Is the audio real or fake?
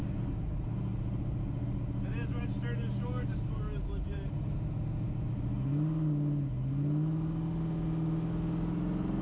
real